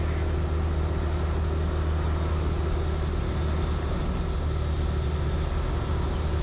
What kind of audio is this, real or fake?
real